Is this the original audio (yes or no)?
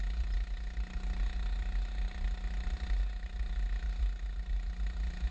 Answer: yes